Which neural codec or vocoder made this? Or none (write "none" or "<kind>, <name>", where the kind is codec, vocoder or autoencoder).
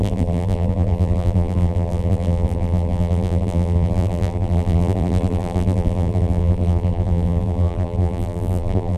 vocoder, BigVGAN v2